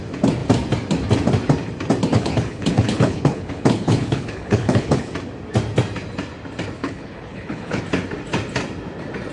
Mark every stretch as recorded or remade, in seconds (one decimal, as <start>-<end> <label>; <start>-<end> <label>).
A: 0.0-2.1 recorded; 2.1-5.1 remade; 5.1-6.8 recorded; 6.8-7.8 remade; 7.8-9.3 recorded

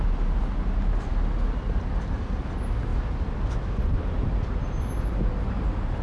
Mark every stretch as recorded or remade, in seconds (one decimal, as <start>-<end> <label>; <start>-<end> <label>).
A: 0.0-6.0 recorded